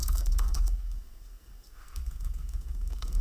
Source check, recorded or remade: remade